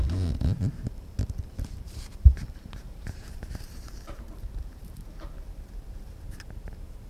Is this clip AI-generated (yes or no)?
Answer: yes